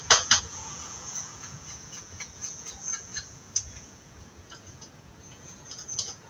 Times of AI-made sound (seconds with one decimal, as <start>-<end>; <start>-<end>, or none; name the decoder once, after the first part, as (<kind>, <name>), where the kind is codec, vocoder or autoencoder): 0.0-6.3 (vocoder, Vocos)